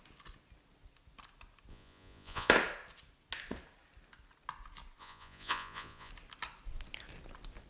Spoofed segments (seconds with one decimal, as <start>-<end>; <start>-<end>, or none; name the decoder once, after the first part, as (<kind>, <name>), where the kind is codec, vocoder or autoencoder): 1.7-2.5 (vocoder, Vocos); 5.0-6.1